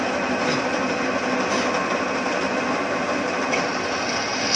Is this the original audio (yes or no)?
yes